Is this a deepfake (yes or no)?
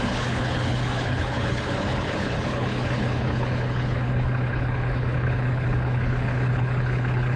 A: yes